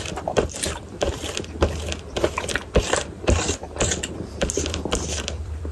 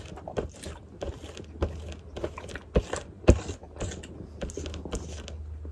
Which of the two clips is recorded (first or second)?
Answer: second